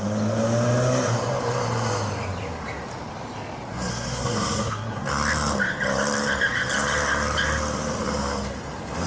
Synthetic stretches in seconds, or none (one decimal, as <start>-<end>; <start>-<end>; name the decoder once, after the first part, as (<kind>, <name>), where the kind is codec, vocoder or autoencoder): 3.9-5.1 (codec, SNAC)